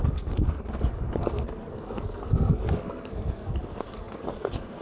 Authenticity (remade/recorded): remade